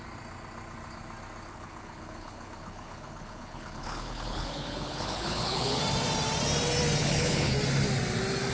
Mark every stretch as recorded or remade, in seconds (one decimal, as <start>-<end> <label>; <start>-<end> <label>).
0.0-1.5 recorded; 1.5-5.8 remade; 5.8-7.0 recorded; 7.0-7.5 remade; 7.5-8.5 recorded